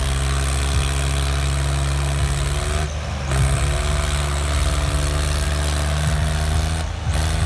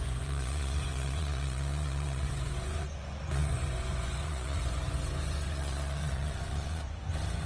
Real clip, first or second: first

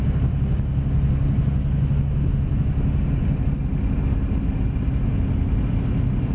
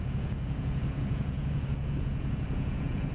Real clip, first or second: first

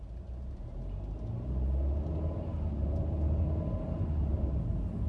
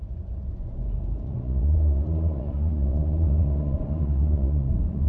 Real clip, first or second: first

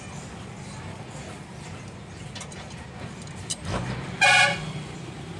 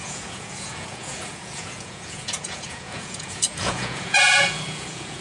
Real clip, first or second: first